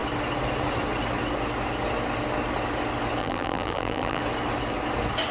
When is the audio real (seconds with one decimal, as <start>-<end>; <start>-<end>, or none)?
0.0-3.2; 4.2-5.3